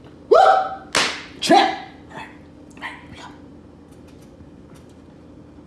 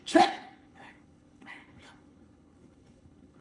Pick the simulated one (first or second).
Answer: second